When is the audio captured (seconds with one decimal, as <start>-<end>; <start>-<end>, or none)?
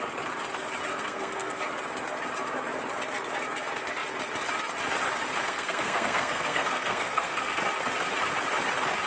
0.0-0.9; 1.6-5.4; 7.6-9.1